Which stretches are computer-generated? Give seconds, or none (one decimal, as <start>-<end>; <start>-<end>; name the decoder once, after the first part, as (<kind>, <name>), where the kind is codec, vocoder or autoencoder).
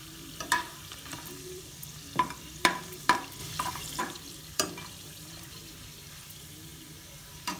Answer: 0.0-5.6 (vocoder, BigVGAN v2); 6.1-6.7